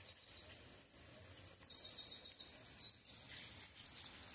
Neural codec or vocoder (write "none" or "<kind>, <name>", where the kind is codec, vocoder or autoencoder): none